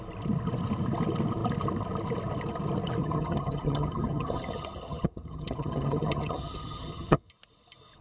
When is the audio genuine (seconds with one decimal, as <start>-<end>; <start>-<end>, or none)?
0.0-3.0; 7.3-8.0